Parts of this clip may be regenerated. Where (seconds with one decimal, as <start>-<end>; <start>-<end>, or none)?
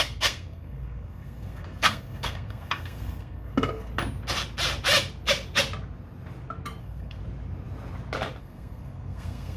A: 0.0-3.9; 6.8-7.2; 8.4-9.6